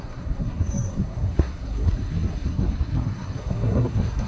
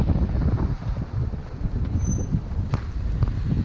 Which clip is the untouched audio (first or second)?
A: second